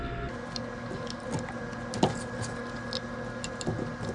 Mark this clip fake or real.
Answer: real